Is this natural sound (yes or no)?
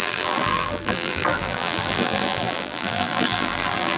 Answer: no